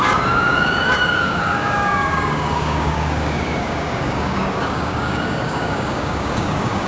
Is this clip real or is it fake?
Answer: fake